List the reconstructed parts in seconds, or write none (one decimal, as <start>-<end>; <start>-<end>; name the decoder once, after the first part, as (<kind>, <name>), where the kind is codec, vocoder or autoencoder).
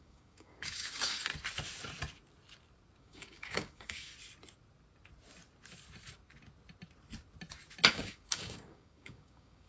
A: 0.0-1.3 (codec, DAC); 3.0-4.1; 7.9-9.7